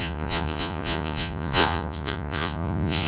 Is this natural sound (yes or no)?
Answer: no